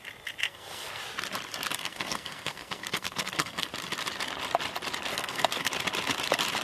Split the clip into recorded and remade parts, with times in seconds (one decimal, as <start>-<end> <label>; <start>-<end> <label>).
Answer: 0.0-0.4 recorded; 0.4-1.0 remade; 1.0-1.8 recorded; 1.8-3.7 remade; 3.7-5.1 recorded; 5.1-5.7 remade; 5.7-6.6 recorded